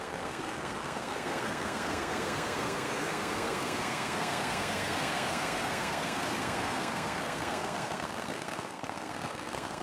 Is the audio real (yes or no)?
no